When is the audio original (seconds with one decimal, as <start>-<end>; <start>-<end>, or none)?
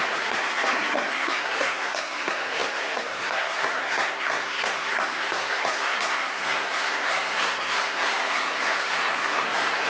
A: none